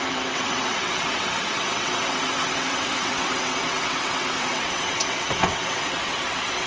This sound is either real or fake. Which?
fake